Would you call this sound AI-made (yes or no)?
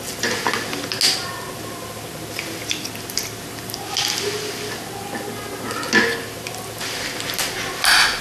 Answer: no